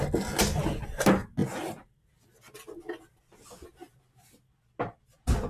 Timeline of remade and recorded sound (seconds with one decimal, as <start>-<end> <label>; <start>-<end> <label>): 0.0-5.5 recorded